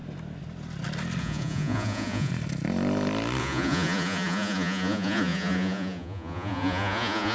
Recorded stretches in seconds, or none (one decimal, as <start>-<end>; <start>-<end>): 0.0-1.2; 2.3-3.4